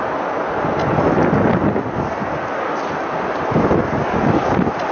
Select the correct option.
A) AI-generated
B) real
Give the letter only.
B